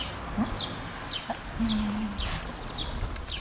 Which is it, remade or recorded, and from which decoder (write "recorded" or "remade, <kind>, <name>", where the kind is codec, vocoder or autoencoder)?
recorded